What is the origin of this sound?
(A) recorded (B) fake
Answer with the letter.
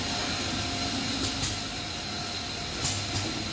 A